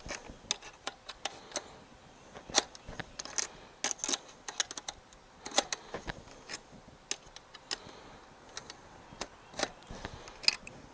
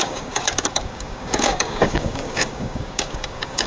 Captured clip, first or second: first